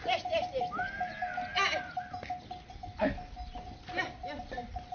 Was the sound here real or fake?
real